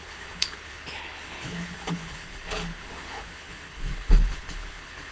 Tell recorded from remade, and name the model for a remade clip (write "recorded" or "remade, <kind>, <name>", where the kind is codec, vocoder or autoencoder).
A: remade, codec, HILCodec